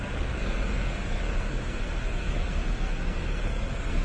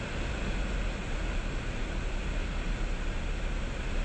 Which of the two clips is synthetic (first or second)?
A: first